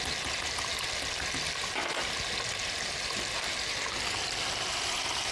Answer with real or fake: real